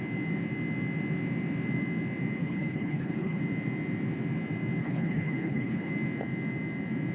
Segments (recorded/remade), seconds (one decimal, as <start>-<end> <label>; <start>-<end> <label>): 0.0-2.4 recorded; 2.4-3.4 remade; 3.4-4.8 recorded; 4.8-5.9 remade; 5.9-7.1 recorded